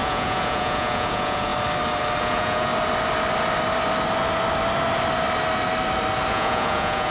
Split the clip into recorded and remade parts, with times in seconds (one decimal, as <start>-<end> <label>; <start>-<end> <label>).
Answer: 0.0-1.5 remade; 1.5-2.2 recorded; 2.2-2.7 remade; 2.7-6.3 recorded; 6.3-7.1 remade